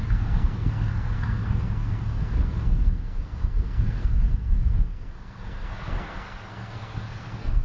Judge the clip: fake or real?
fake